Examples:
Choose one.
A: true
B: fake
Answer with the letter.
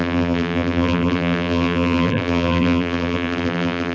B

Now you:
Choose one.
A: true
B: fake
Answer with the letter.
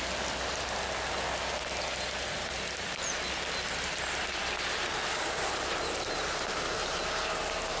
A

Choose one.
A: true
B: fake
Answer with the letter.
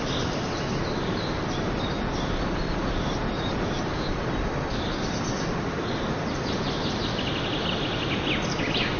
A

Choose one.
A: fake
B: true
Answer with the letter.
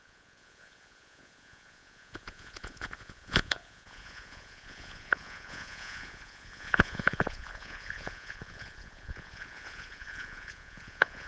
A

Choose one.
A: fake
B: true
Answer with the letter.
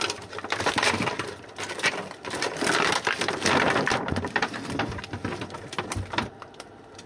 A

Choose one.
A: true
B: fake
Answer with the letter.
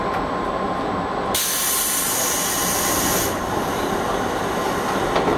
A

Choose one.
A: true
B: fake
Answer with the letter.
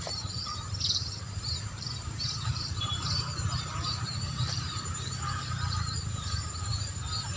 B